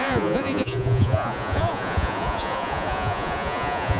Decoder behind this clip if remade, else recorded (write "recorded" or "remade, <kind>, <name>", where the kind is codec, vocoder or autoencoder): remade, vocoder, Vocos